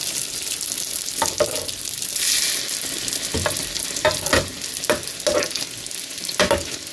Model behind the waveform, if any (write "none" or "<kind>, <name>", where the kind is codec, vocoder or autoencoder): none